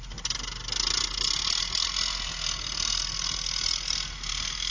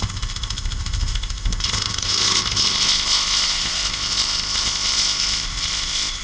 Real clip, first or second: first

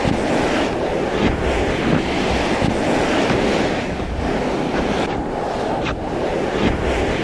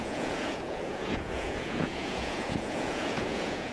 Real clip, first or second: first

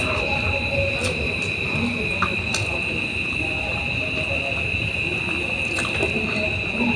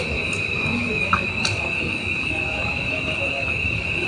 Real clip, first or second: first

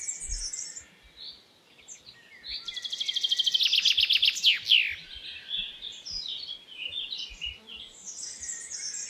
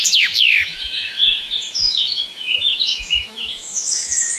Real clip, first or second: first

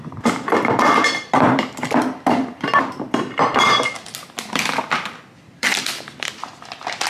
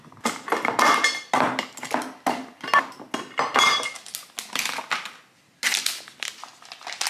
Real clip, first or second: second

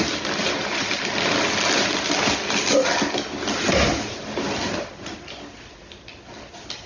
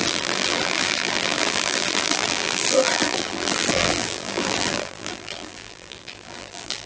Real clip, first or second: first